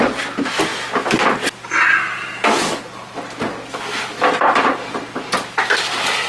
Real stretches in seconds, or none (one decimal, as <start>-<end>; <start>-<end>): 0.7-2.5